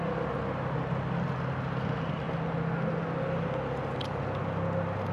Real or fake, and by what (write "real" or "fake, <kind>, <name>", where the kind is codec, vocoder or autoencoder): real